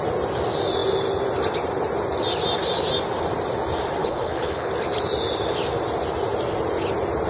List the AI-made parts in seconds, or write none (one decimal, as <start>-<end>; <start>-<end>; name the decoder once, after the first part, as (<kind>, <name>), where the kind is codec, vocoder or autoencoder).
4.0-4.7 (codec, HILCodec)